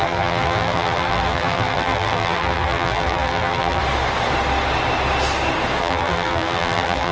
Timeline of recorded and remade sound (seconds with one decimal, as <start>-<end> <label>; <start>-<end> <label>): 0.0-3.8 remade; 3.8-5.8 recorded; 5.8-7.1 remade